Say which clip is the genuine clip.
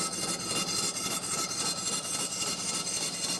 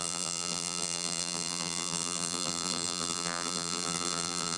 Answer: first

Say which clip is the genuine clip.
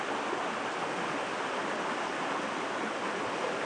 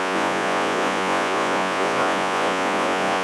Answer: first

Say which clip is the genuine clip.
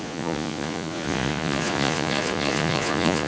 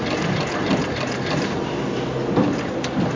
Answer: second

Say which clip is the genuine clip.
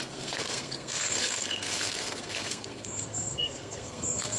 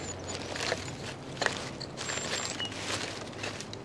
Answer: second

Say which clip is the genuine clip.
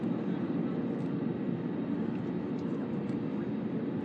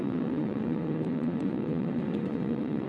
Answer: first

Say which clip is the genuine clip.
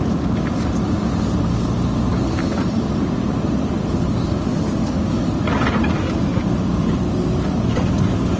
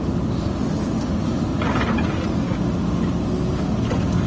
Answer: second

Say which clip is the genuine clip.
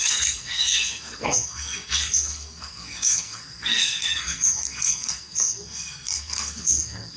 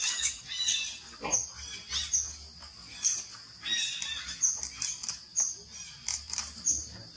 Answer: second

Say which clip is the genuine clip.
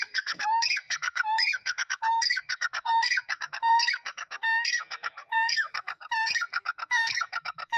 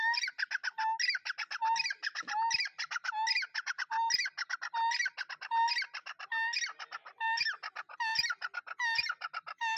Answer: second